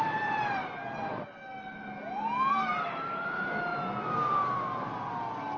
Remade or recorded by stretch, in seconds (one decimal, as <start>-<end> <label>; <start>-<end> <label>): 0.0-0.6 remade; 0.6-2.5 recorded; 2.5-3.7 remade; 3.7-5.6 recorded